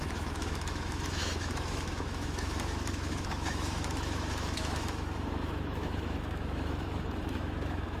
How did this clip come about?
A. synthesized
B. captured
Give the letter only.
A